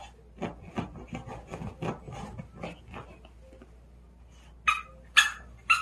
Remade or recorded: recorded